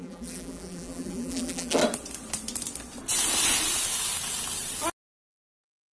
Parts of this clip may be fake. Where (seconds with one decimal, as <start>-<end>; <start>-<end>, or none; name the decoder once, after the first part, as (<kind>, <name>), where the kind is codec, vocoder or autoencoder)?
0.0-1.8 (vocoder, BigVGAN v2); 5.3-5.9